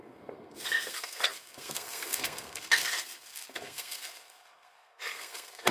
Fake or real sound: fake